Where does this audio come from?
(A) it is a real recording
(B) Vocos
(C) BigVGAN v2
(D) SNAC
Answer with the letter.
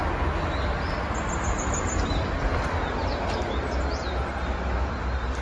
A